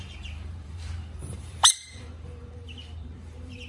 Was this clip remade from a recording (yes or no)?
yes